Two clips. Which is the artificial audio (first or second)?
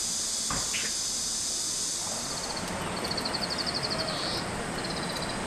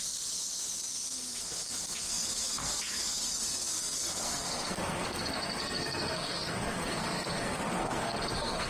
second